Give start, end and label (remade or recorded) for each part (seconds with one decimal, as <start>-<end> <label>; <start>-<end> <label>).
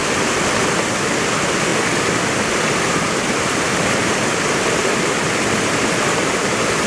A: 0.0-1.7 recorded; 1.7-4.2 remade; 4.2-4.8 recorded; 4.8-5.6 remade; 5.6-6.9 recorded